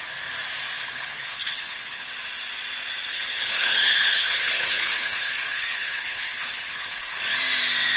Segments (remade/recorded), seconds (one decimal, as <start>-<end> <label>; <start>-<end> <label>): 0.0-0.8 recorded; 0.8-2.1 remade; 2.1-3.1 recorded; 3.1-7.2 remade; 7.2-8.0 recorded